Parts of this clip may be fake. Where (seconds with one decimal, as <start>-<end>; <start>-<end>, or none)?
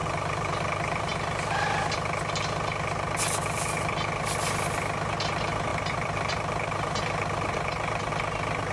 0.0-0.7; 5.7-8.1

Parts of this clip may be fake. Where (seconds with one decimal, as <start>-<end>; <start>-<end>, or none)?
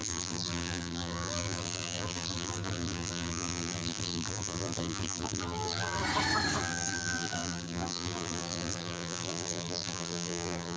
0.0-6.0; 6.6-10.8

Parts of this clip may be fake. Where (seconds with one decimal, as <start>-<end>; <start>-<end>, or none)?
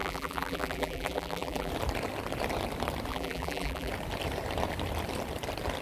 0.0-1.7; 3.1-3.9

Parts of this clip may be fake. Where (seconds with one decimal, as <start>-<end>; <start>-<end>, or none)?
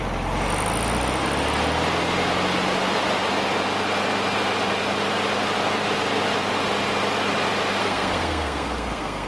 7.8-9.3